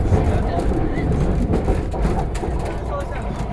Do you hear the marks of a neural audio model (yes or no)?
no